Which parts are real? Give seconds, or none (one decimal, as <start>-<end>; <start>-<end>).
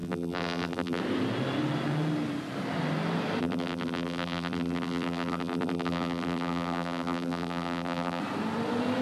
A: 1.0-3.4; 8.2-9.0